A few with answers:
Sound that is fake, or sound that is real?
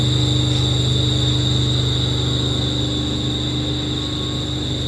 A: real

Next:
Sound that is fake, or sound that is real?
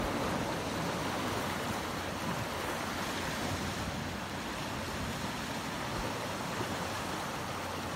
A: real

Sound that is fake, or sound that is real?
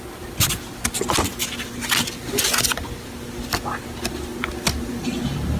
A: real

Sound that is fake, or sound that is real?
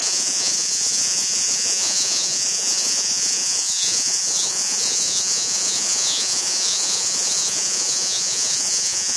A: fake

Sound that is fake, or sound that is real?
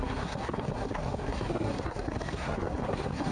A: fake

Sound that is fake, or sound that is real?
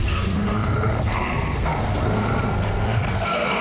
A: fake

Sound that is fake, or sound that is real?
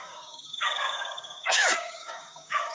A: fake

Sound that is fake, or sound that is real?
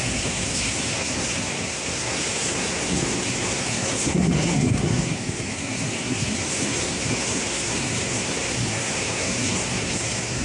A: fake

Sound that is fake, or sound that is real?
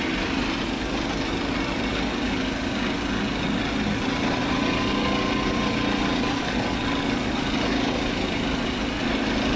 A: real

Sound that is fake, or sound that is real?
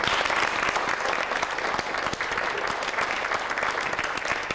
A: real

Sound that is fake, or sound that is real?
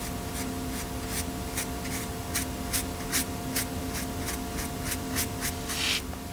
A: real